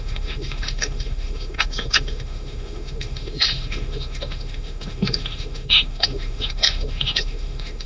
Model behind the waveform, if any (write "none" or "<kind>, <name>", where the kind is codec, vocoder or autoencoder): autoencoder, DAC-VAE